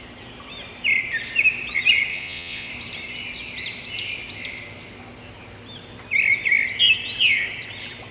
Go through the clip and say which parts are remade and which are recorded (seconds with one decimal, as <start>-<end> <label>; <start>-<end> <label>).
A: 0.0-2.1 recorded; 2.1-2.7 remade; 2.7-8.1 recorded